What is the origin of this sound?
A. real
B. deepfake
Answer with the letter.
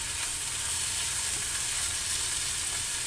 A